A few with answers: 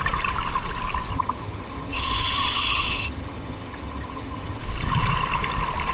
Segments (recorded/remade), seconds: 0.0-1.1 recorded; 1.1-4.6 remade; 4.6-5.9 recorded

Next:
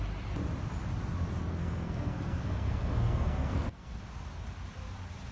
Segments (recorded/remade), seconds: 0.0-1.4 recorded; 1.4-4.0 remade; 4.0-5.3 recorded

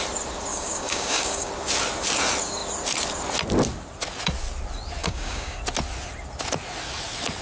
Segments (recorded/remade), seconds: 0.0-0.5 recorded; 0.5-1.5 remade; 1.5-5.0 recorded; 5.0-5.6 remade; 5.6-7.4 recorded

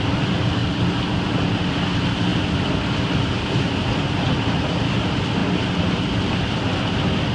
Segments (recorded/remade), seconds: 0.0-7.3 recorded

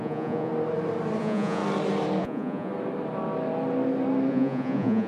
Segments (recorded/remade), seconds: 0.0-0.5 remade; 0.5-1.2 recorded; 1.2-1.6 remade; 1.6-2.2 recorded; 2.2-2.7 remade; 2.7-4.3 recorded; 4.3-5.1 remade

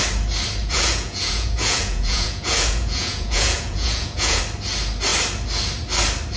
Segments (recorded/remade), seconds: 0.0-0.6 recorded; 0.6-4.4 remade; 4.4-6.4 recorded